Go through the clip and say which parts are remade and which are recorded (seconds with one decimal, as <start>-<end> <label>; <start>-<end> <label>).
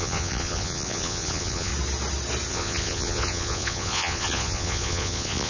0.0-1.7 remade; 1.7-2.5 recorded; 2.5-5.5 remade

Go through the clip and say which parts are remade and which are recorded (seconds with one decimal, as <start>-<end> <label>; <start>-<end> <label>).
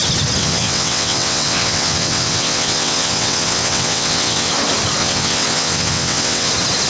0.0-0.4 recorded; 0.4-4.5 remade; 4.5-5.0 recorded; 5.0-6.5 remade; 6.5-6.9 recorded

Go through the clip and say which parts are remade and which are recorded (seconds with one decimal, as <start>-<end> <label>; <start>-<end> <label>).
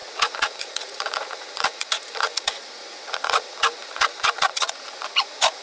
0.0-5.6 remade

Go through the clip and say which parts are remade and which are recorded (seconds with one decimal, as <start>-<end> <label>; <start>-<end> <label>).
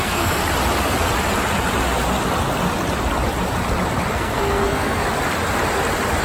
0.0-0.4 remade; 0.4-4.1 recorded; 4.1-5.0 remade; 5.0-6.2 recorded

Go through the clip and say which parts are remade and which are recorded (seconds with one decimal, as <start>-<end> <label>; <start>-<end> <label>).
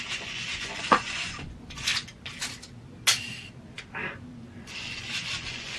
0.0-1.9 remade; 1.9-4.6 recorded; 4.6-5.8 remade